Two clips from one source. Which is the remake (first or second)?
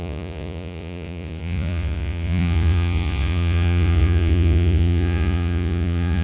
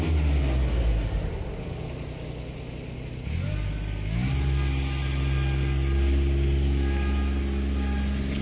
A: first